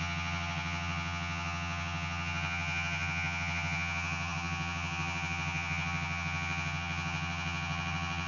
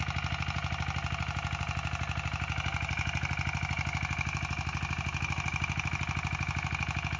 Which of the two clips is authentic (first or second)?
second